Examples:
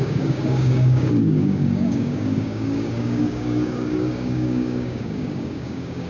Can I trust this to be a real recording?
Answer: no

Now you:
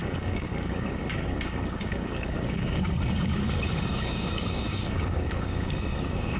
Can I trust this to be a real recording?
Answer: no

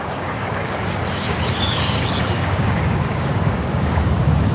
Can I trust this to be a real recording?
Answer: no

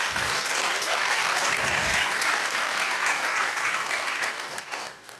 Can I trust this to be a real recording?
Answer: no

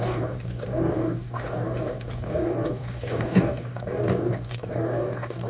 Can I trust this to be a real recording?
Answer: no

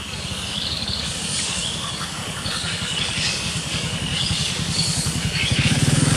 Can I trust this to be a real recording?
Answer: no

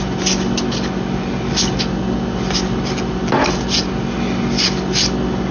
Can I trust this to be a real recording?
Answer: yes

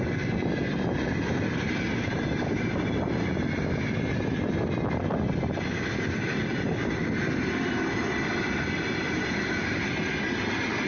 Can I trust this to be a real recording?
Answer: yes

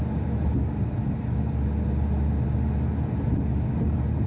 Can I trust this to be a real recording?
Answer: yes